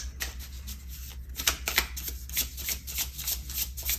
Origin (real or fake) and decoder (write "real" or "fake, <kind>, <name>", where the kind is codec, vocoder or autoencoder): real